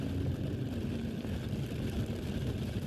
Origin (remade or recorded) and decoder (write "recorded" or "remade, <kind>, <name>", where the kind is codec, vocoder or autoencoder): recorded